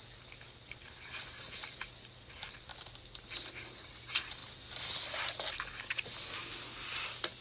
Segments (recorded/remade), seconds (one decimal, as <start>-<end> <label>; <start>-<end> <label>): 0.0-7.4 recorded